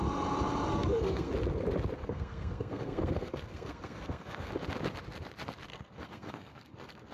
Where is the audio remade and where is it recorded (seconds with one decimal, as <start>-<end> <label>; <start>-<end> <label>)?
0.0-0.7 recorded; 0.7-1.3 remade; 1.3-2.0 recorded; 2.0-4.5 remade; 4.5-5.7 recorded; 5.7-7.1 remade